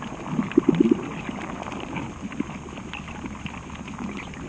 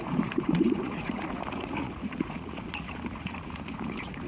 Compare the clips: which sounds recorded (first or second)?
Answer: first